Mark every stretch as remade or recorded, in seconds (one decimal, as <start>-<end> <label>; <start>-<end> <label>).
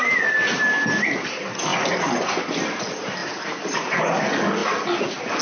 0.0-5.4 recorded